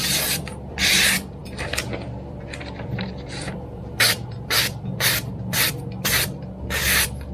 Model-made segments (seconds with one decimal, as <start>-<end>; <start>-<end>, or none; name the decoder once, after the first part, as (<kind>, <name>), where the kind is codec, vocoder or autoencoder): 0.0-7.3 (vocoder, BigVGAN v2)